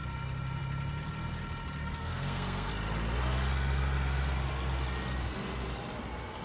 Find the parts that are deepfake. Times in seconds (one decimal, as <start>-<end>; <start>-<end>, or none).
1.8-2.7